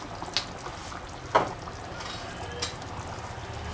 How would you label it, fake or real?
real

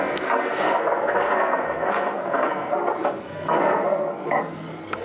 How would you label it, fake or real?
fake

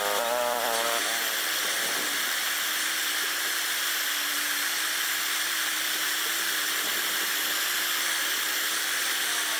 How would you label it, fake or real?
fake